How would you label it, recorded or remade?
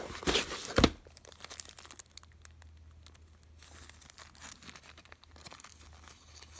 recorded